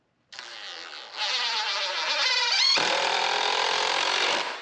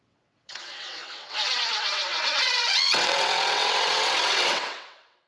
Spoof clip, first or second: second